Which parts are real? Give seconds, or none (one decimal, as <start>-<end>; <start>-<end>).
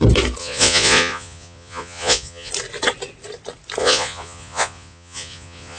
0.0-0.4; 2.5-3.8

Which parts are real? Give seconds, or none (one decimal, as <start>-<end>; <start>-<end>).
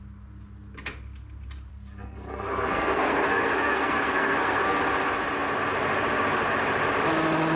0.0-1.7; 4.8-7.6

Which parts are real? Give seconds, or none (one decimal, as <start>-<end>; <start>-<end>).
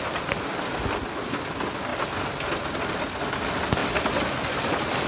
0.0-5.1